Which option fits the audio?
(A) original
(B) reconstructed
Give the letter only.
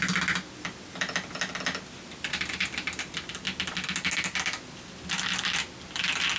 A